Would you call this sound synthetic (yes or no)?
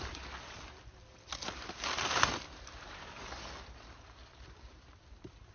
no